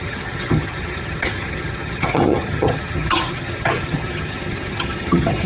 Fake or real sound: fake